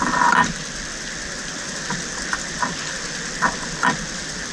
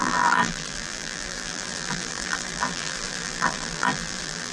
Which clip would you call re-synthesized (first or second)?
second